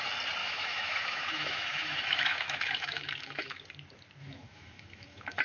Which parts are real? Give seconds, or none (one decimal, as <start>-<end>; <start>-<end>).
0.0-0.4; 3.6-4.2